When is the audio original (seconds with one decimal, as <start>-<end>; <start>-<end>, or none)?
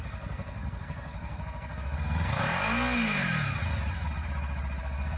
2.4-4.8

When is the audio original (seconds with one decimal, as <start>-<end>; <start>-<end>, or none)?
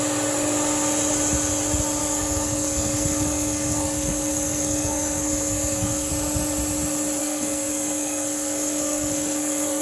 0.0-2.0; 6.1-7.2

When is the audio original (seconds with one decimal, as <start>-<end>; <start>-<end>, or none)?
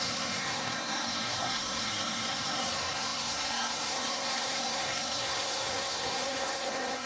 none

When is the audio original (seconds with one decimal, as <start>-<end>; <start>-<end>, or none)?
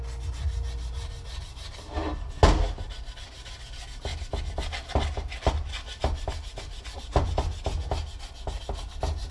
0.0-9.3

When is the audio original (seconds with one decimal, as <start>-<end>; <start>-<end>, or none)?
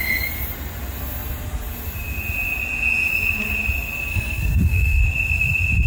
0.0-4.1; 5.0-5.9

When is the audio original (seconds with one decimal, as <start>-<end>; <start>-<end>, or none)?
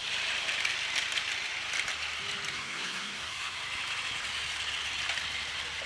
0.0-2.5; 3.6-5.9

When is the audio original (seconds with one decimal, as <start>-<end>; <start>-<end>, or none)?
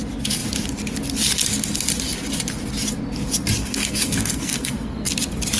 0.0-3.6; 5.1-5.6